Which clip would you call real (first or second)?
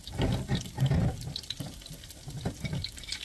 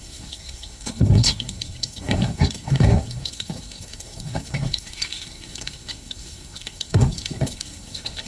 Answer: first